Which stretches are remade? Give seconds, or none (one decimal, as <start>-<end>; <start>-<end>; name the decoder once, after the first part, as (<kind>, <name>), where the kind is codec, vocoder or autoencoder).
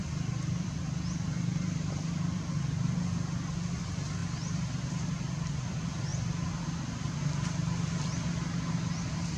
0.0-6.1 (vocoder, BigVGAN v2)